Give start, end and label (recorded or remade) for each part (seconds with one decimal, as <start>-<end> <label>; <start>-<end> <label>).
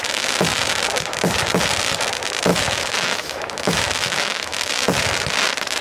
0.0-2.5 recorded; 2.5-4.7 remade; 4.7-5.8 recorded